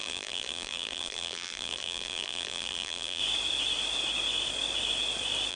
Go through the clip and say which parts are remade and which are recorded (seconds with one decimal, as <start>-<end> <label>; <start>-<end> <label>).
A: 0.0-3.2 remade; 3.2-5.5 recorded